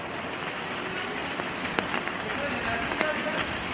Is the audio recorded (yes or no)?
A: yes